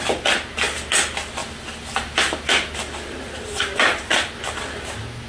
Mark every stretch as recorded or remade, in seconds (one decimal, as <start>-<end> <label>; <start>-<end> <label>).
0.0-5.3 recorded